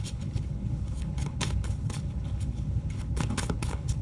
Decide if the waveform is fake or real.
fake